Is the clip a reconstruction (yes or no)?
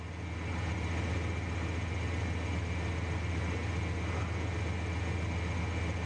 no